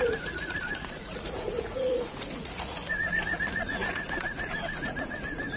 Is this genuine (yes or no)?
no